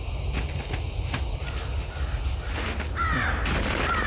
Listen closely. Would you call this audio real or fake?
real